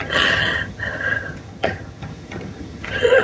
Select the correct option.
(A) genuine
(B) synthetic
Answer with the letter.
B